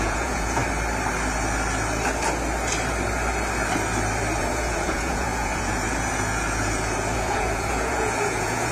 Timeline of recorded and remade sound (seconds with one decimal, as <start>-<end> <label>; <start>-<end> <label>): 0.0-0.6 remade; 0.6-4.4 recorded; 4.4-8.7 remade